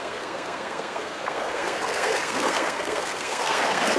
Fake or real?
fake